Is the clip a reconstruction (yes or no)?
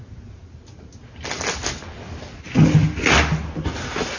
no